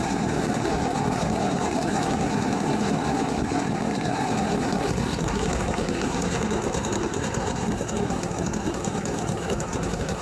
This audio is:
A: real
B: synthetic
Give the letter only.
B